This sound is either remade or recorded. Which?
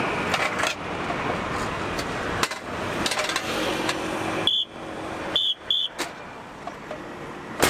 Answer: recorded